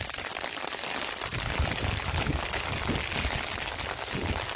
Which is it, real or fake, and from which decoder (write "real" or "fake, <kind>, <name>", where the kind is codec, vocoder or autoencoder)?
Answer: real